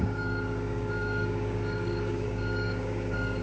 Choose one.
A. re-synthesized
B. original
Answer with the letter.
A